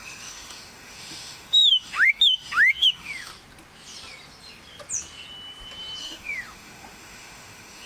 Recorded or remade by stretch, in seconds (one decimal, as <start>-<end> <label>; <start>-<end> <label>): 0.0-3.3 remade; 3.3-6.0 recorded; 6.0-7.9 remade